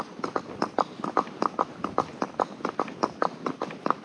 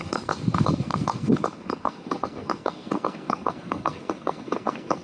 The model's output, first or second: second